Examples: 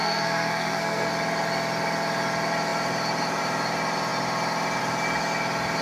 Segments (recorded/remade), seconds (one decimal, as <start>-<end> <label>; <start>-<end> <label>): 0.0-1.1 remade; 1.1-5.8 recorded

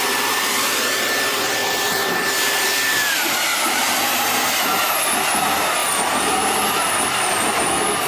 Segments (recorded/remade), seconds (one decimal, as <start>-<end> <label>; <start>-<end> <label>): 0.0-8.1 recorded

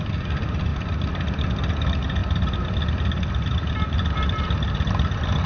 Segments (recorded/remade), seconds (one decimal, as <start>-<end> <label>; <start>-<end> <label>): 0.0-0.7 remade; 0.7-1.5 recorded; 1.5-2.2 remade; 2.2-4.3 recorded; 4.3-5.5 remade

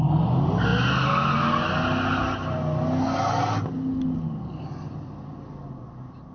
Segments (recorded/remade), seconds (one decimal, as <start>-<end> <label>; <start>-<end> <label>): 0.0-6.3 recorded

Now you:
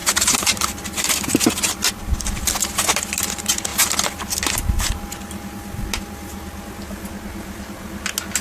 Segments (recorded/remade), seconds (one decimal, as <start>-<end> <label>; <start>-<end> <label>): 0.0-1.7 remade; 1.7-8.4 recorded

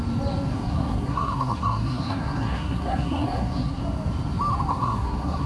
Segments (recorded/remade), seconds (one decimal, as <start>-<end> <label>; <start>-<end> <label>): 0.0-0.5 recorded; 0.5-3.8 remade; 3.8-4.7 recorded; 4.7-5.5 remade